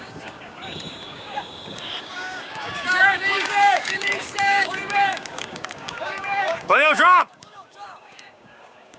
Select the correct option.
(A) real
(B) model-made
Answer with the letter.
B